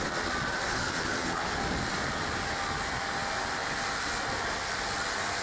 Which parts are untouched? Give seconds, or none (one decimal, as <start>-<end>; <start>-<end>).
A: 0.0-0.7; 1.6-5.4